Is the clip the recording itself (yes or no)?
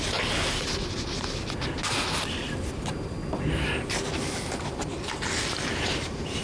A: yes